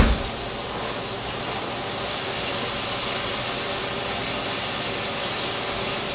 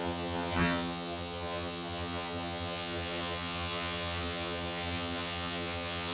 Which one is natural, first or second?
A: first